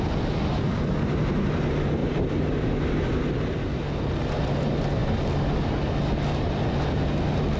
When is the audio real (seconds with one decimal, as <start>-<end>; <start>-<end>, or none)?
0.0-7.6